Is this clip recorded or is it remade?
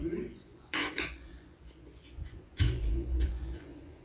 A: remade